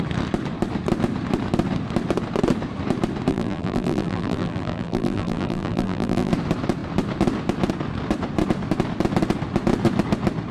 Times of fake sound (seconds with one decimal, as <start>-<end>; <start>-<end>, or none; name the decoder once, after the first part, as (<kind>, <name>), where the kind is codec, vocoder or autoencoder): 3.3-6.3 (vocoder, BigVGAN v2)